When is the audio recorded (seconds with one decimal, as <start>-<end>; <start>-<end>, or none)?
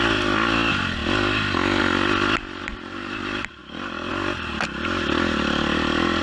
0.0-2.6; 3.2-3.6; 4.1-6.2